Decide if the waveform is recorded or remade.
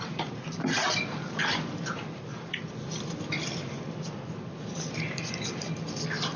recorded